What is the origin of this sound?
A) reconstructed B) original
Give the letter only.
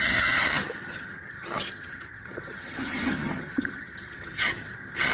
A